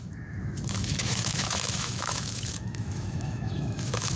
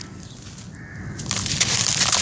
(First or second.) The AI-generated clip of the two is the first